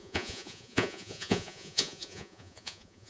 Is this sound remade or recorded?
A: remade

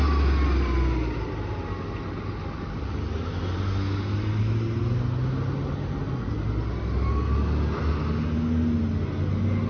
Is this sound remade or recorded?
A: recorded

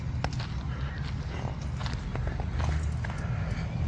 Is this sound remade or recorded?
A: recorded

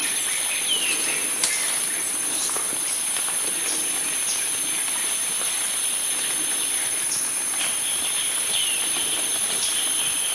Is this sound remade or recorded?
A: recorded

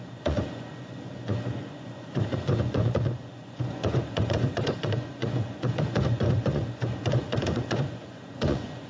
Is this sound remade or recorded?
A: remade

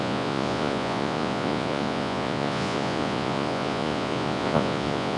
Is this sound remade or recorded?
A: remade